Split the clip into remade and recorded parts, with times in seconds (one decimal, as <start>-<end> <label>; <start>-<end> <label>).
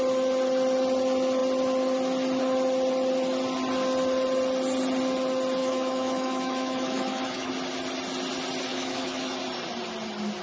0.0-5.6 recorded; 5.6-7.5 remade; 7.5-8.7 recorded; 8.7-9.4 remade; 9.4-10.4 recorded